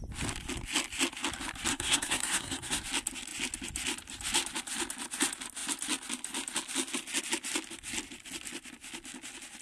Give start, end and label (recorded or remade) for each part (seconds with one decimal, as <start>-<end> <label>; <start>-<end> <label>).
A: 0.0-1.7 recorded; 1.7-2.8 remade; 2.8-9.6 recorded